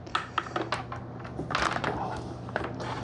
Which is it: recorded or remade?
recorded